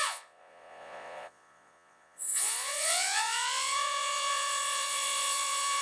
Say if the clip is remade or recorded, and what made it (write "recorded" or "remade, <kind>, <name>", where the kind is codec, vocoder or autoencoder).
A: remade, vocoder, Vocos